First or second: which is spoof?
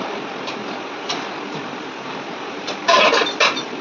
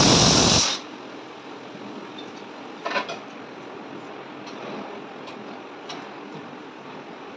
first